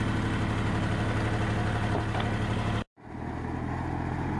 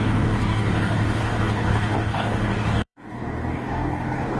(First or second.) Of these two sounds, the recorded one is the first